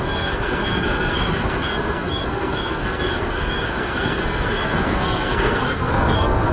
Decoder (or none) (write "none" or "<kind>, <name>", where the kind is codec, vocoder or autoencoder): codec, SNAC